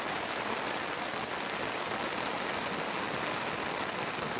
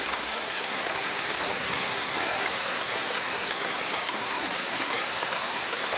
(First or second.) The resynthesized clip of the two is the second